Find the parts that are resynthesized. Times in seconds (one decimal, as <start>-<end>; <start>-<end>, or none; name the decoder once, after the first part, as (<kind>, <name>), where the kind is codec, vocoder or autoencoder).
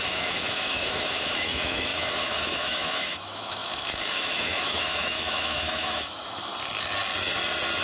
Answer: 0.0-6.5 (autoencoder, DAC-VAE)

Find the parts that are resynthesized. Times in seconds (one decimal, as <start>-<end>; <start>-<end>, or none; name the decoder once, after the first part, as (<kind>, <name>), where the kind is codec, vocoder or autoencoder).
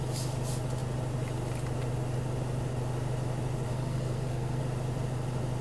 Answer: 3.7-4.6 (codec, SNAC)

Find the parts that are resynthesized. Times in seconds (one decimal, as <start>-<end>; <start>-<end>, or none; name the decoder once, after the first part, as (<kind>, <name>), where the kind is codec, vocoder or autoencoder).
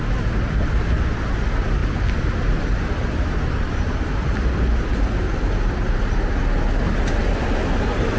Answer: none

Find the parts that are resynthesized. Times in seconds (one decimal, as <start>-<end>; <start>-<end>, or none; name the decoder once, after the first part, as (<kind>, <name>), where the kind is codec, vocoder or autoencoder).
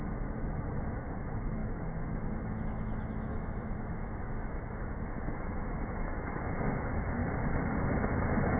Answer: 0.0-7.2 (autoencoder, DAC-VAE)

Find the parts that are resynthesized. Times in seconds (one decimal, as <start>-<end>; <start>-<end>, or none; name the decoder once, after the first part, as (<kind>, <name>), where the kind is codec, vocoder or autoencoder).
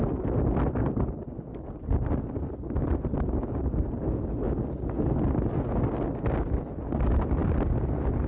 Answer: none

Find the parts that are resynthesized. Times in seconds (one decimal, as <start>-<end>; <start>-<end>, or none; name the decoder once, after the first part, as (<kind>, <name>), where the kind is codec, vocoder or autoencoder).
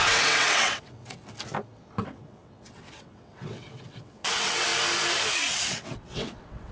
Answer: 0.0-1.2 (vocoder, WaveNeXt); 2.0-4.7; 5.5-6.7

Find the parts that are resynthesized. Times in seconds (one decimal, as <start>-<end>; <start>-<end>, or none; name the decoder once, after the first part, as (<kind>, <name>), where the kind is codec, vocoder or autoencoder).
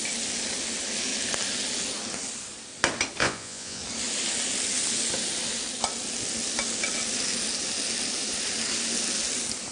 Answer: 3.2-3.8 (vocoder, Vocos)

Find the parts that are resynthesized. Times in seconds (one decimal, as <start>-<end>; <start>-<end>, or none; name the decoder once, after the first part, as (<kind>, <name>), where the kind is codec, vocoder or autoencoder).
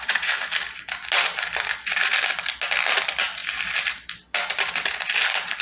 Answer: none